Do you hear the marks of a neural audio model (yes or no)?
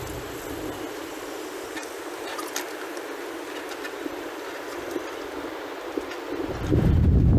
no